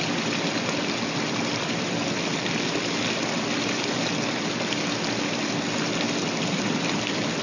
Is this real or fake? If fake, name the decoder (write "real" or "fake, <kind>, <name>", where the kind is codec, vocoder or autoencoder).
real